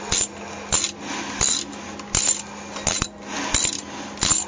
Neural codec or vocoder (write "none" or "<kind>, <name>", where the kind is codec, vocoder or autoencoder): none